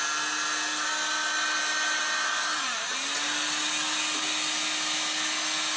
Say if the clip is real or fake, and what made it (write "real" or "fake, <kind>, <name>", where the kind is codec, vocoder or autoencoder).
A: real